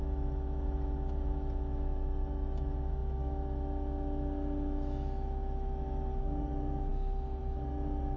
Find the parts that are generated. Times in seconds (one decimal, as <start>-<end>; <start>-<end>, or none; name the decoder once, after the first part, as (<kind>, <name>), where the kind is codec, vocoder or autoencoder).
0.0-8.2 (autoencoder, DAC-VAE)